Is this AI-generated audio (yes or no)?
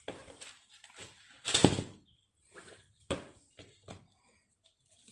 no